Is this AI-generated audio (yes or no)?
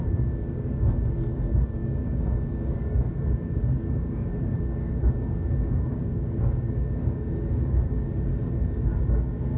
yes